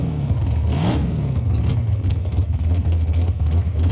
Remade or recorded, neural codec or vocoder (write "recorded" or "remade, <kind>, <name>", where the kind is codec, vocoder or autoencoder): remade, codec, SNAC